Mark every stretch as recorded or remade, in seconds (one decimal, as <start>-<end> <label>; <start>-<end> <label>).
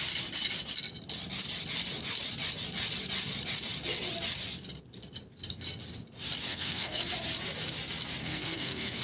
0.0-6.5 recorded; 6.5-7.0 remade; 7.0-8.2 recorded; 8.2-9.0 remade